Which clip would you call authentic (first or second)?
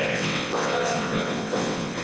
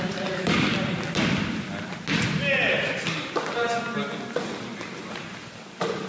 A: second